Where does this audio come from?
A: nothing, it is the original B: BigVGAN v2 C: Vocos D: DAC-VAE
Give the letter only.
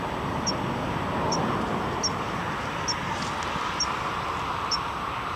A